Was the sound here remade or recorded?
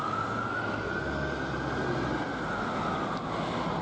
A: recorded